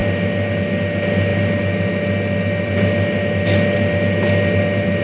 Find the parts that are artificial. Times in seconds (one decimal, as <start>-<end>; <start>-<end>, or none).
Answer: none